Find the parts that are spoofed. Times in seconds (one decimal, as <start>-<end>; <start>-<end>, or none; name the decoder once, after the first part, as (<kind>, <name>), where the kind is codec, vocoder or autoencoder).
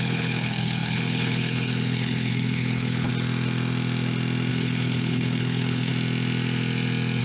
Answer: 0.0-3.1 (codec, HILCodec); 4.5-5.9